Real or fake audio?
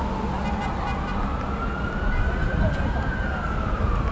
real